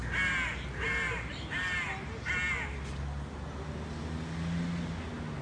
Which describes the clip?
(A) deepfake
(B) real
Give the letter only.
B